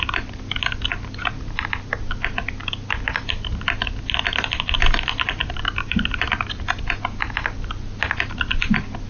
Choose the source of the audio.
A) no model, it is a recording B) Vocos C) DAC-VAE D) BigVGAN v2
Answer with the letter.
A